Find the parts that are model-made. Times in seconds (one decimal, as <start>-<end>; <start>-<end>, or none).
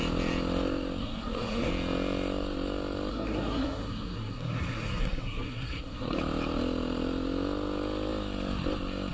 1.0-1.7; 3.1-6.2